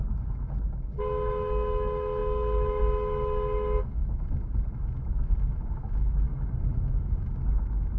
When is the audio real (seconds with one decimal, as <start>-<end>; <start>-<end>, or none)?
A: none

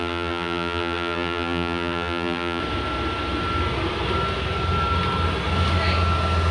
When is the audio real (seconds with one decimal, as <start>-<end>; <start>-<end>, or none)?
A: 2.6-6.5

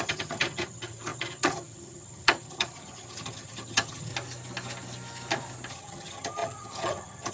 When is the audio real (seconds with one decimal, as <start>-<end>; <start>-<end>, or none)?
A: 4.1-5.7

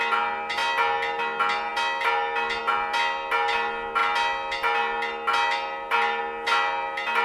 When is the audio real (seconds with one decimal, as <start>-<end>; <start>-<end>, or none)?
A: 0.0-7.2

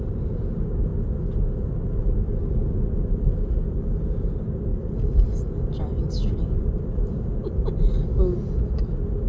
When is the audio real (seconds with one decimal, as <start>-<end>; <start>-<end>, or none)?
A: 0.0-9.3

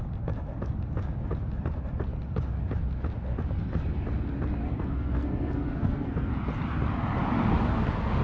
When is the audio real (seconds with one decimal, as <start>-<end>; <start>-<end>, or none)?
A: 0.0-4.6; 6.3-8.2